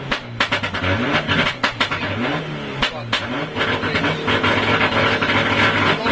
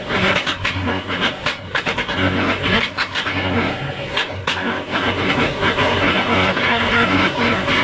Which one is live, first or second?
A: first